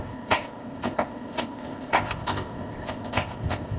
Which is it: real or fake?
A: fake